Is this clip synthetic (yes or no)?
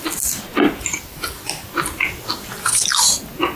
no